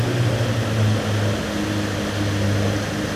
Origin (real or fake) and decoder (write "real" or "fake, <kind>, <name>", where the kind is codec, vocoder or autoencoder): real